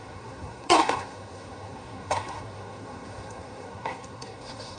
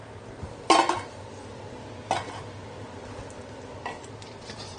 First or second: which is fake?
first